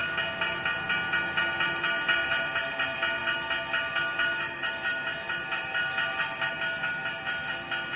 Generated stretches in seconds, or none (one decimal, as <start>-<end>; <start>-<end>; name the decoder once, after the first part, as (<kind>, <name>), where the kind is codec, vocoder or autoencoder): none